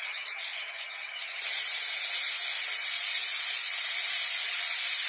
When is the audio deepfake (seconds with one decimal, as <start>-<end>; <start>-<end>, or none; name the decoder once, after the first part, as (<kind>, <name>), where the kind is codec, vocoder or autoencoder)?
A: 0.0-1.6 (vocoder, HiFi-GAN)

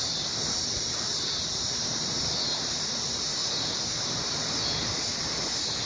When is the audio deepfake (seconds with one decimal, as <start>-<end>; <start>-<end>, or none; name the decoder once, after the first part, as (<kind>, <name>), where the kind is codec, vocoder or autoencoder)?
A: 0.0-3.4 (vocoder, BigVGAN v2); 5.1-5.9

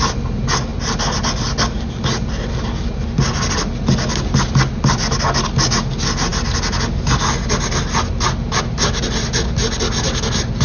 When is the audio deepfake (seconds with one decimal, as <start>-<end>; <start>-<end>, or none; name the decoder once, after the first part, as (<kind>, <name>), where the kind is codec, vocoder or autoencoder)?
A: none

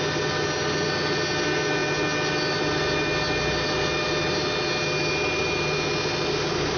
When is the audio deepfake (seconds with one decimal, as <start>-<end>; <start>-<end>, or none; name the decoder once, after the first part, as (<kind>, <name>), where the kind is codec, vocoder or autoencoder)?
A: none